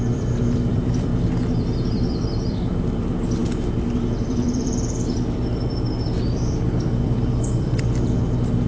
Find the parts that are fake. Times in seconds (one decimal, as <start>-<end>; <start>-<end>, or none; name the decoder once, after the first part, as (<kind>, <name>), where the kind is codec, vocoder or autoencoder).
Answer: 0.0-8.7 (vocoder, BigVGAN v2)